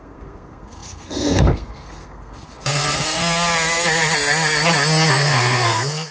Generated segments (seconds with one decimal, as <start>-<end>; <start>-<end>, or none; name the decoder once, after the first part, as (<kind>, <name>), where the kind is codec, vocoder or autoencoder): 0.0-3.2 (codec, SNAC); 5.1-6.1